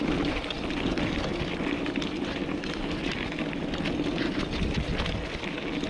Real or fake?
real